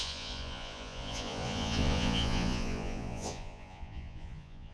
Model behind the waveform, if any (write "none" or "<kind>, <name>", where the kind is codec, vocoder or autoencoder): vocoder, Vocos